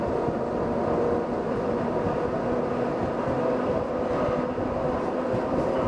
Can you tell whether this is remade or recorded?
recorded